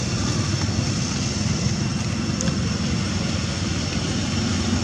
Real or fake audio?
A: real